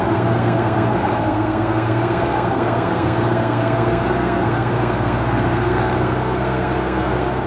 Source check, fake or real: fake